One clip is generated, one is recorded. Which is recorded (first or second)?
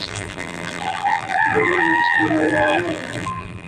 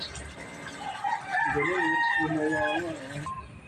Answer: second